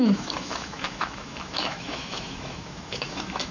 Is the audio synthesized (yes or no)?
yes